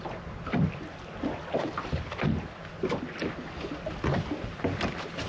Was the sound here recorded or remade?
recorded